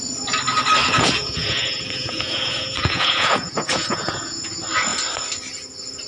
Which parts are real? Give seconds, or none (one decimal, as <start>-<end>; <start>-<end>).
0.0-0.8; 4.5-6.1